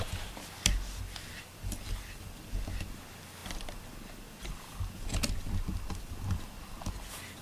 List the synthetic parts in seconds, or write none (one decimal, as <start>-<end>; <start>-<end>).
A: none